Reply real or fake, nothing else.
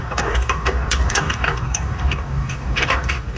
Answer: fake